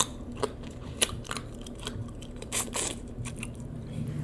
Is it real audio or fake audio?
fake